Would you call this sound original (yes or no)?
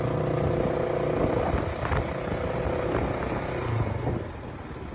yes